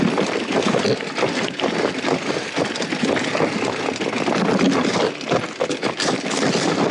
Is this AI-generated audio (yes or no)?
no